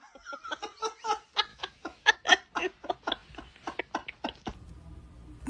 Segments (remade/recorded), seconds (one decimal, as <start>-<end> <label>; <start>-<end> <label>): 0.0-1.5 recorded; 1.5-2.1 remade; 2.1-5.5 recorded